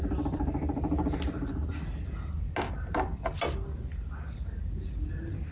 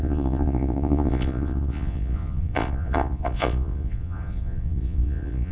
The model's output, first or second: second